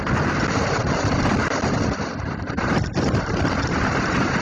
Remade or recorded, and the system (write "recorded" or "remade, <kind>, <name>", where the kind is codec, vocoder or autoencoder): recorded